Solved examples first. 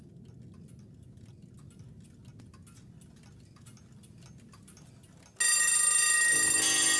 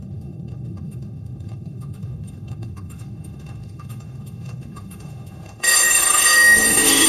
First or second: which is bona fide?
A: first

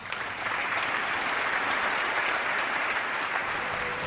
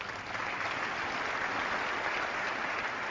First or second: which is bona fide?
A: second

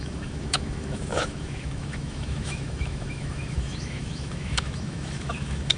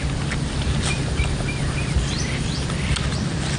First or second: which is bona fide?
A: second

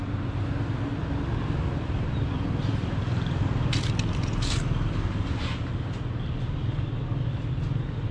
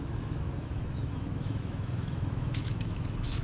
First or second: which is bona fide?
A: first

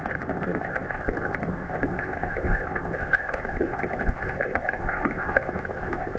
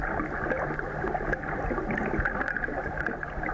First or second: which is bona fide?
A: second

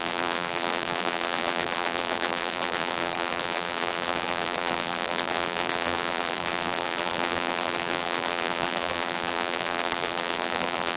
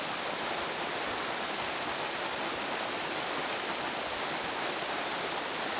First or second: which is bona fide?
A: second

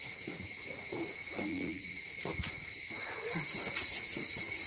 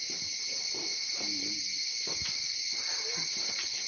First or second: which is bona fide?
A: second